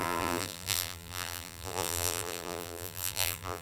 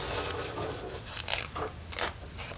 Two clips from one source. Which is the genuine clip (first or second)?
second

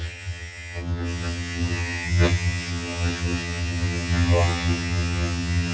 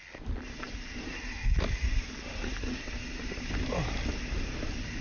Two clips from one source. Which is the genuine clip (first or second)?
second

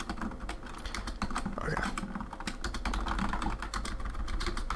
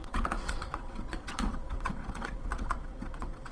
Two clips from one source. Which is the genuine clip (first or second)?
first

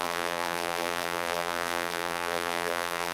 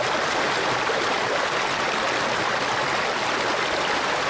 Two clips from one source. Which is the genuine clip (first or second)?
second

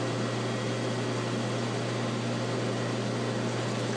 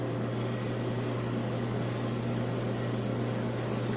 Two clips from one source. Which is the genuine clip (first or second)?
first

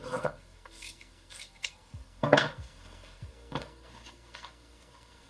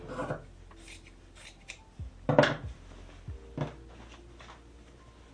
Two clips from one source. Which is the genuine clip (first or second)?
second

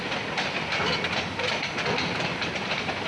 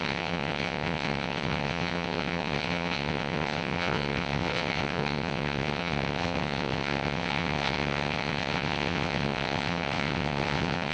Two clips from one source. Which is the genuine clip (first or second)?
first